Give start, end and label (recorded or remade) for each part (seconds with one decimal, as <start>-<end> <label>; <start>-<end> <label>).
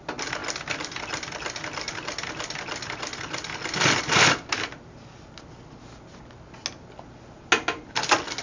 0.0-8.4 recorded